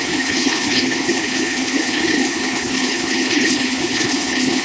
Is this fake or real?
fake